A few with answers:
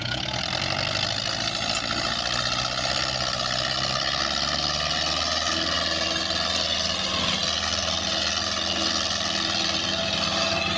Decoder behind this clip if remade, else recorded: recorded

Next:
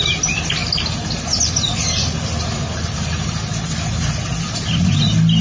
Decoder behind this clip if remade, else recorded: recorded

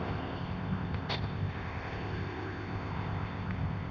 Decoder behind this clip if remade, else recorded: remade, codec, ZipCodec